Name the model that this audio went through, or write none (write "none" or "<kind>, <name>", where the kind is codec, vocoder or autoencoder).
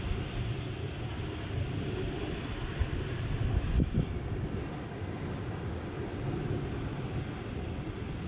none